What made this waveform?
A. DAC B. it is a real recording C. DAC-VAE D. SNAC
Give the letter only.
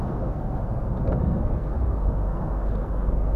D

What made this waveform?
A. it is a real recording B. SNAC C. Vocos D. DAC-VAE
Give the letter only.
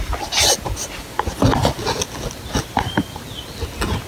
A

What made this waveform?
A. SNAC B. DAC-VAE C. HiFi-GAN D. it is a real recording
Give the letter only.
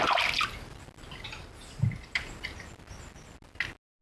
D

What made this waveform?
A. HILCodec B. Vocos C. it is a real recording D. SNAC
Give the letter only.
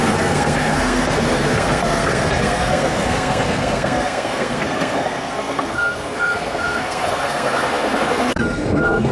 D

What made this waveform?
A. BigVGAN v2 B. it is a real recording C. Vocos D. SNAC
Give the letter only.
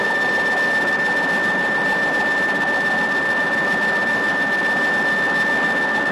B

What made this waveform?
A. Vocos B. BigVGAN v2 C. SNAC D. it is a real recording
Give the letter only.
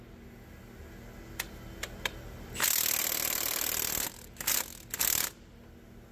D